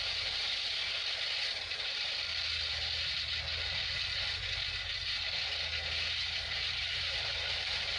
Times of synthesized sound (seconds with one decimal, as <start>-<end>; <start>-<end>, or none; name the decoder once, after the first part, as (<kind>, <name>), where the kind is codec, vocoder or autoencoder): 0.0-0.7 (vocoder, BigVGAN v2); 1.6-2.3; 7.0-8.0